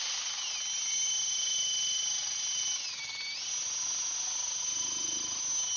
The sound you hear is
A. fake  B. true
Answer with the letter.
B